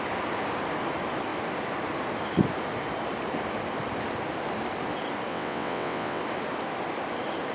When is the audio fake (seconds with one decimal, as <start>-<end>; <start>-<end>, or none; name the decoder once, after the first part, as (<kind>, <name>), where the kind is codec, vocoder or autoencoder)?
5.3-6.2 (vocoder, WaveNeXt)